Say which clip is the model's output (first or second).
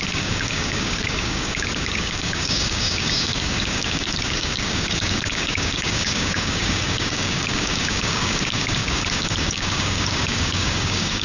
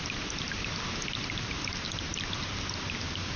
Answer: first